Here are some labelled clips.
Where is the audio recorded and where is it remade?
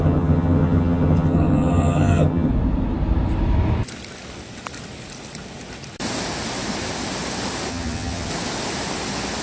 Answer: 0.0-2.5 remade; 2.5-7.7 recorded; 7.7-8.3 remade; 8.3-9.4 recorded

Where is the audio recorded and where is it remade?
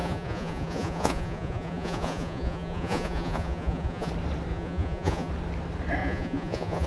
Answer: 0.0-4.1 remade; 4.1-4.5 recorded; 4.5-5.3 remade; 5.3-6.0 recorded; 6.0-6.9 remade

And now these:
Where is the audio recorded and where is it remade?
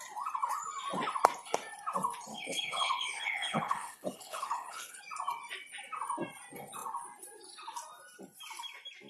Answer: 0.0-2.3 recorded; 2.3-5.0 remade; 5.0-9.1 recorded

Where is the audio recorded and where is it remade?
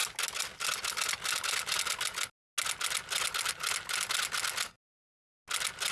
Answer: 0.0-5.9 recorded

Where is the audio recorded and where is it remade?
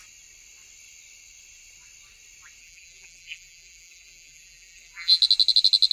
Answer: 0.0-2.6 recorded; 2.6-5.2 remade; 5.2-5.9 recorded